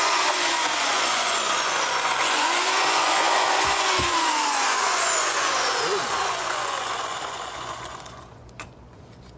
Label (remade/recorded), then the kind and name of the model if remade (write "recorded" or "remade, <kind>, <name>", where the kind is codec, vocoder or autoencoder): remade, vocoder, Vocos